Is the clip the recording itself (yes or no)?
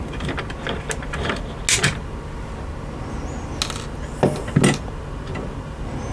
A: yes